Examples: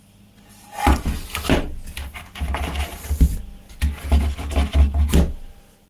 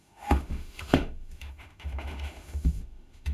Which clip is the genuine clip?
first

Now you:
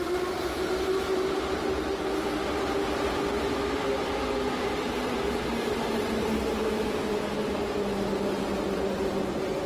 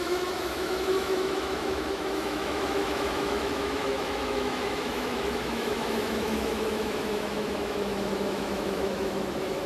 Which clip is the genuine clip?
first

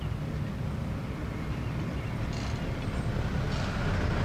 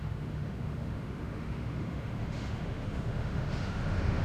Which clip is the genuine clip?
first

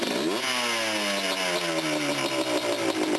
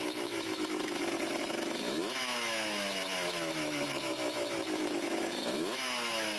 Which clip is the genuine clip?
first